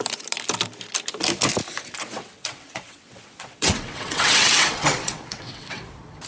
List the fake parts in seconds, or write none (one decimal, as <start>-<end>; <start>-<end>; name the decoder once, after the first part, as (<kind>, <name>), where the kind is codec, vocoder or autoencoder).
2.0-5.8 (vocoder, WaveNeXt)